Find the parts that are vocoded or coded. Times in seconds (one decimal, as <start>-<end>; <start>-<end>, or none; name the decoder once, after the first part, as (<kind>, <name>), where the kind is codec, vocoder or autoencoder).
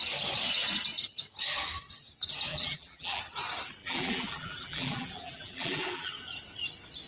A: 2.5-3.2 (vocoder, BigVGAN v2); 3.8-6.1